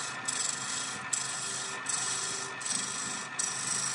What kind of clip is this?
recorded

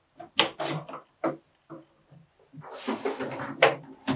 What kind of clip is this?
recorded